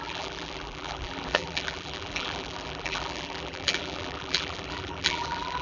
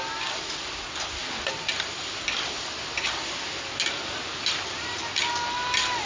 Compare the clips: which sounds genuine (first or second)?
second